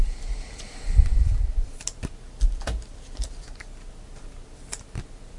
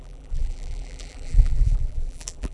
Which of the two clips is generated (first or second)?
second